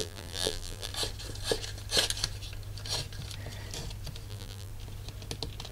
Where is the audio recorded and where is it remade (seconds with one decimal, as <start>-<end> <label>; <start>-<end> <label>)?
0.0-0.9 remade; 0.9-4.3 recorded; 4.3-4.7 remade; 4.7-5.7 recorded